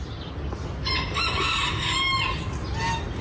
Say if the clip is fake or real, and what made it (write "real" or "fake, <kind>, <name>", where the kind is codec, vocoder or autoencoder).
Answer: real